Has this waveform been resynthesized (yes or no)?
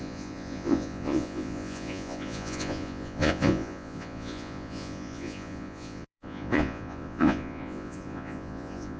yes